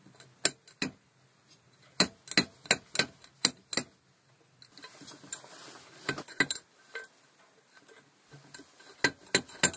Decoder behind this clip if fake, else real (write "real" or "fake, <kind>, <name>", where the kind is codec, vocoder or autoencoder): real